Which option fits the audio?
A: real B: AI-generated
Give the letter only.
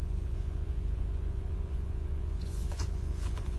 B